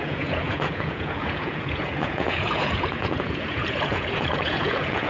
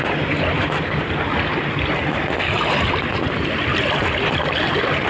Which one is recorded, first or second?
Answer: second